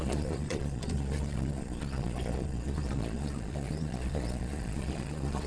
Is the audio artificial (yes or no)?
yes